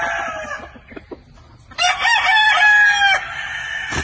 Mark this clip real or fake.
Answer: real